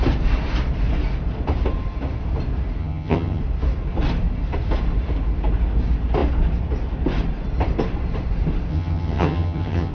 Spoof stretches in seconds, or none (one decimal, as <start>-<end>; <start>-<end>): 2.8-3.4; 8.7-9.9